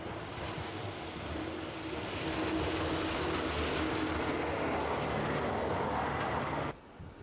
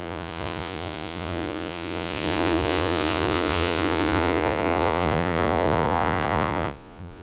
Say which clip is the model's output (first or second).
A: second